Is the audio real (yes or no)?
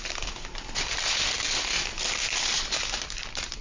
yes